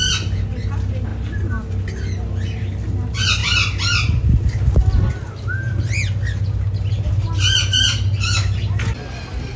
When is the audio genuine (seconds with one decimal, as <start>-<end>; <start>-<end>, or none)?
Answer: 0.0-9.6